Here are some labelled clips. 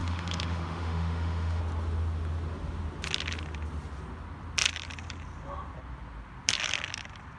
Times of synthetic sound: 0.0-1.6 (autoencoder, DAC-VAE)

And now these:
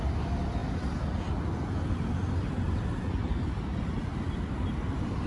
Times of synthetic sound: none

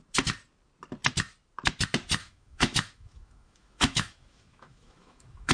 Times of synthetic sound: 2.2-5.5 (autoencoder, DAC-VAE)

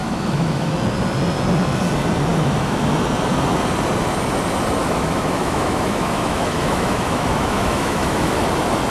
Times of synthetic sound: 0.0-0.7 (autoencoder, DAC-VAE); 2.3-2.9; 4.8-8.4

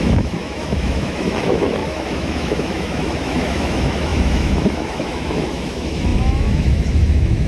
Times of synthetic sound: 0.0-7.5 (autoencoder, DAC-VAE)

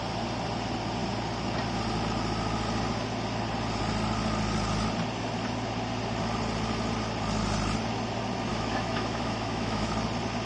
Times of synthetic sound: 8.5-9.9 (autoencoder, DAC-VAE)

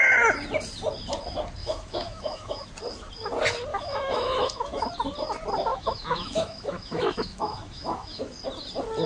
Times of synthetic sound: 1.6-2.6 (autoencoder, DAC-VAE); 3.7-4.9; 5.7-8.2